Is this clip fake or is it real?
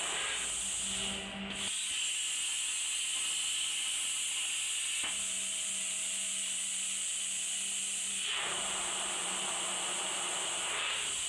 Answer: real